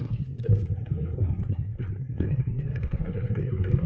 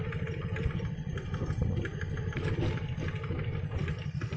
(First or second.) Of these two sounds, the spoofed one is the first